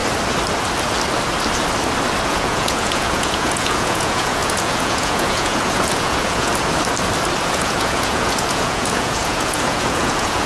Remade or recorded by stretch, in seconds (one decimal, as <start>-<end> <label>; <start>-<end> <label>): 0.0-2.3 recorded; 2.3-6.5 remade; 6.5-7.5 recorded; 7.5-10.5 remade